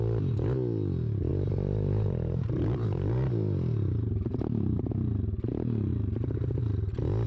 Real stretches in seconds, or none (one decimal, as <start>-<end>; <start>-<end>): 0.0-1.3; 4.9-7.3